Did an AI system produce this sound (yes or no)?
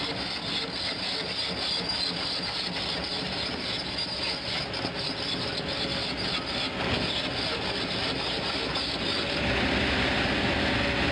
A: no